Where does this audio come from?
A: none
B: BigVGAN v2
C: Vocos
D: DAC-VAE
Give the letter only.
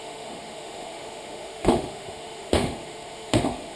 D